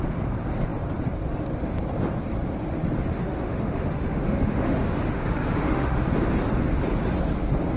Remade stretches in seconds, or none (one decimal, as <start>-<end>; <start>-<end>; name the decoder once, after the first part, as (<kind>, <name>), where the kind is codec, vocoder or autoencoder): 3.2-6.0 (autoencoder, DAC-VAE)